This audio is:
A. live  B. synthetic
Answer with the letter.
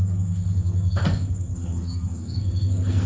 B